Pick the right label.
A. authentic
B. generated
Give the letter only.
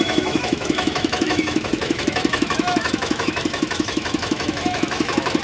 B